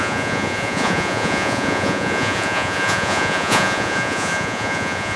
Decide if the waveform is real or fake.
fake